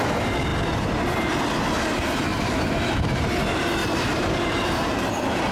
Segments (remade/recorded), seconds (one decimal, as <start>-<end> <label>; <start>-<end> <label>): 0.0-2.3 recorded; 2.3-3.3 remade; 3.3-3.8 recorded; 3.8-5.5 remade